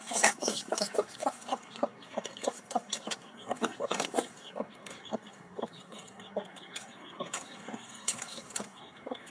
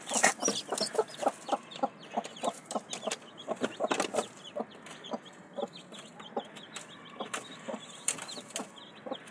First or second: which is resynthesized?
first